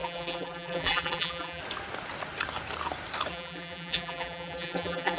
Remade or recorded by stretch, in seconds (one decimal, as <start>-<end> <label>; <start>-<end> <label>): 0.0-1.6 remade; 1.6-3.3 recorded; 3.3-5.2 remade